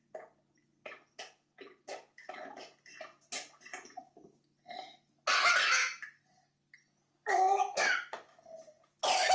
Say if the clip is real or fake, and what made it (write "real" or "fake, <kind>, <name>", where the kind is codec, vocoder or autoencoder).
real